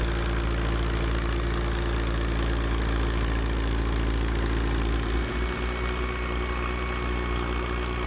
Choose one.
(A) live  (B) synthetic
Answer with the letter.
A